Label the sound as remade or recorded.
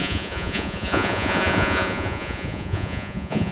remade